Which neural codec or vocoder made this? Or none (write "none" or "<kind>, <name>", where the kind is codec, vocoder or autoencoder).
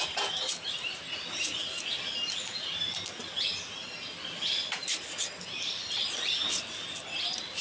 none